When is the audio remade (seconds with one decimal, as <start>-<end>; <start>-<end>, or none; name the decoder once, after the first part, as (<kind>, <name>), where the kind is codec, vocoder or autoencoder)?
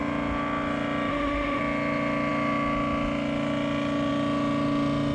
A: 1.1-1.6 (autoencoder, DAC-VAE)